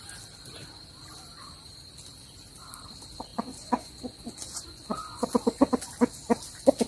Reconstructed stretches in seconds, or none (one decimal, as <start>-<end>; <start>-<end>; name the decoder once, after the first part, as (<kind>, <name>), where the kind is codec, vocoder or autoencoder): 3.3-5.7 (vocoder, Vocos)